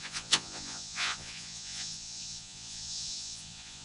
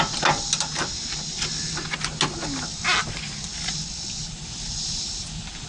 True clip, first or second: second